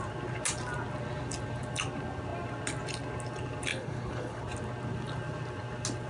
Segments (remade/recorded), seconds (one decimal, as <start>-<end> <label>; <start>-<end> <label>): 0.0-3.7 recorded; 3.7-4.4 remade; 4.4-6.1 recorded